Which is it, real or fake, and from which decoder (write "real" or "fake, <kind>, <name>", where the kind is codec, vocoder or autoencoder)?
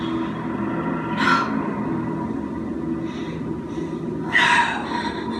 real